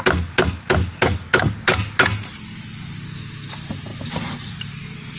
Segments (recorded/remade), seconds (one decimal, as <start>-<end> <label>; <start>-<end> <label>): 0.0-5.2 recorded